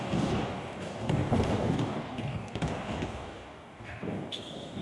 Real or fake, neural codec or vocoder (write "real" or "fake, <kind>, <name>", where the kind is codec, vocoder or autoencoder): fake, codec, DAC